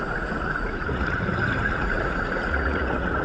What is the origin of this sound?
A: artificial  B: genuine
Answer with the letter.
A